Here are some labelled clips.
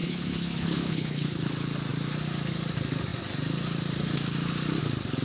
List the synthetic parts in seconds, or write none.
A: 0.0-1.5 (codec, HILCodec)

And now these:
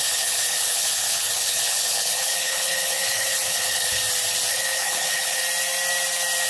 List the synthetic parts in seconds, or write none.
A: 0.0-4.0 (codec, HILCodec); 4.5-5.4

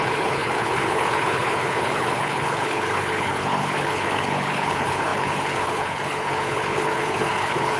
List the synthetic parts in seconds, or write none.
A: 0.0-7.8 (codec, HILCodec)

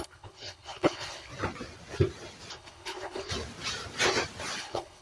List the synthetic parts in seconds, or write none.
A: 0.0-1.3 (codec, HILCodec); 2.5-3.3; 4.6-5.0

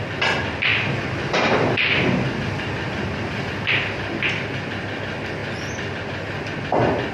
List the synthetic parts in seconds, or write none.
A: none

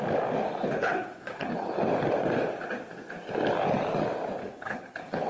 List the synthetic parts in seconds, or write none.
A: 0.6-1.9 (codec, HILCodec); 4.4-5.3

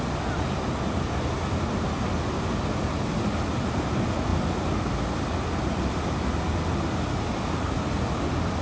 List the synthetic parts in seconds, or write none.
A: none

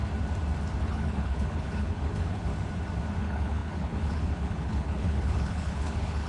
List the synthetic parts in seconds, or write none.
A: 0.8-2.5 (codec, HILCodec); 3.2-6.3